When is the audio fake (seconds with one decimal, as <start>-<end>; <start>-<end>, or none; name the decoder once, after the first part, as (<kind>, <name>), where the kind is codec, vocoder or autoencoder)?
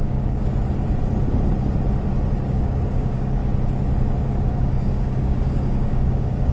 0.0-0.5 (codec, DAC); 2.5-3.4; 4.2-6.5